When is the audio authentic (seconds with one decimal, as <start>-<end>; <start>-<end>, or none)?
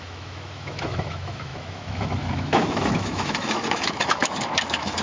none